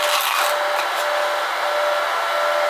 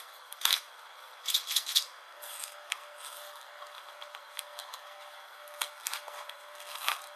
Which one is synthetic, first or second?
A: second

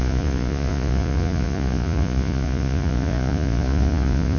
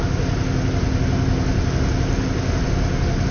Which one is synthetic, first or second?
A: first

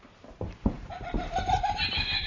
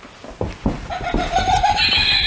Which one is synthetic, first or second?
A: first